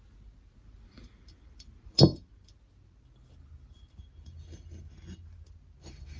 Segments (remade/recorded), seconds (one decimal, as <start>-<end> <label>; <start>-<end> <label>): 0.0-6.2 recorded